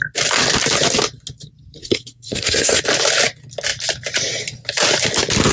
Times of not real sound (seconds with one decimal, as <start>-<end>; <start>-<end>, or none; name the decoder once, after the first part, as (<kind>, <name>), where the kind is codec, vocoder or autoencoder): 1.8-2.8 (codec, SNAC)